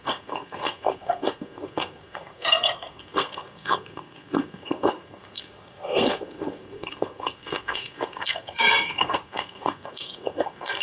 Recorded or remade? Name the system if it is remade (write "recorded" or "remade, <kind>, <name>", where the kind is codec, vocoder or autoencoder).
remade, codec, SNAC